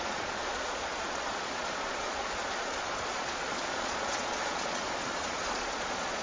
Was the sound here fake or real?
fake